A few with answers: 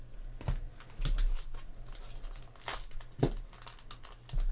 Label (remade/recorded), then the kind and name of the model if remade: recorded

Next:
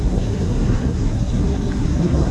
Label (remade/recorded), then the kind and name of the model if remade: remade, codec, SNAC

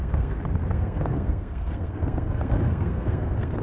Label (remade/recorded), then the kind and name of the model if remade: remade, codec, SNAC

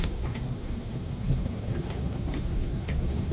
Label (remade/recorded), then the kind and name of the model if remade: remade, codec, SNAC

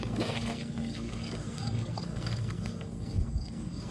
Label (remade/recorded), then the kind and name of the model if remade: remade, codec, SNAC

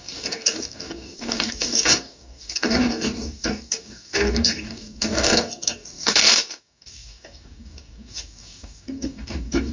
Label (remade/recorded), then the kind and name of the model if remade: remade, codec, DAC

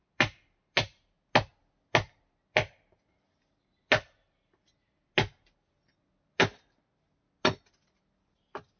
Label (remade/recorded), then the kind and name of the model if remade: recorded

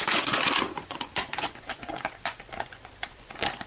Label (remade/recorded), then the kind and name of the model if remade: remade, vocoder, Vocos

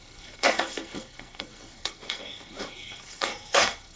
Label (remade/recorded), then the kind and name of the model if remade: remade, codec, SNAC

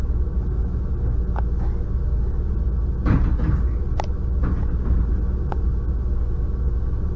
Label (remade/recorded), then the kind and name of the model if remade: recorded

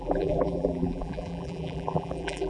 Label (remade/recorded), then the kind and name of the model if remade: remade, vocoder, BigVGAN v2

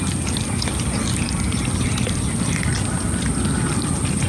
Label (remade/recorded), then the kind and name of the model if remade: recorded